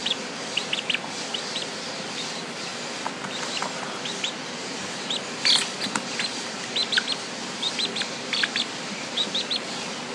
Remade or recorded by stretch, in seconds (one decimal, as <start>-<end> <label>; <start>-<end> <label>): 0.0-2.7 remade; 2.7-5.4 recorded; 5.4-10.1 remade